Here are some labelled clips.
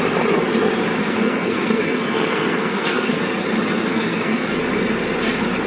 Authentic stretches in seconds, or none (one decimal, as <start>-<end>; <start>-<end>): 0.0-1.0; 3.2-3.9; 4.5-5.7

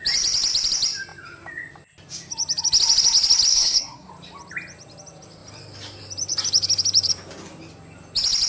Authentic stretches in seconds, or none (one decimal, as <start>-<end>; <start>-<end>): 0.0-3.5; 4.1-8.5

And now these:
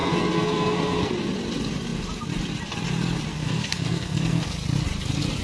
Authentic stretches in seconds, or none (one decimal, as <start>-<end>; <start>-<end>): 1.1-3.3; 4.4-5.4